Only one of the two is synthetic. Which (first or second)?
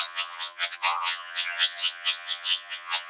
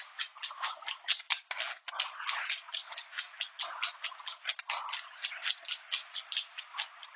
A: first